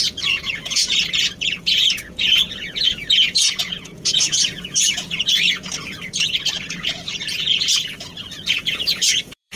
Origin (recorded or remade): remade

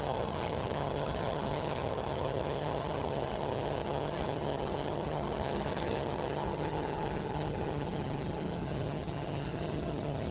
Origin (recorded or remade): remade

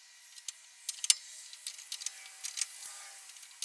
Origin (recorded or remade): recorded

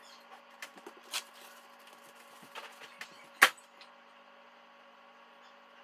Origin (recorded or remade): recorded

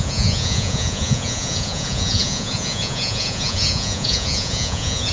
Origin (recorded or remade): remade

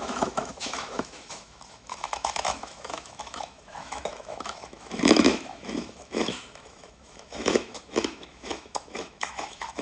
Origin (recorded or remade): remade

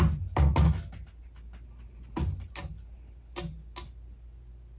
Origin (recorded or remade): recorded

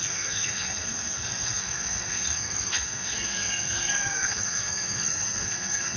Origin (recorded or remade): remade